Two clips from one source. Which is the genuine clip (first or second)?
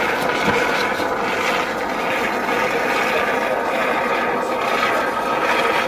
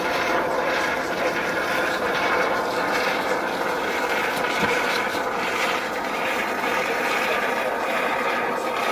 first